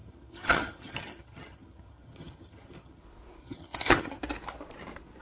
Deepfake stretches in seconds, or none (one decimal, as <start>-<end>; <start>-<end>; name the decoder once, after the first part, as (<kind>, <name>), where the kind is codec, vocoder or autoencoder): 0.0-3.0 (vocoder, HiFi-GAN); 3.4-4.2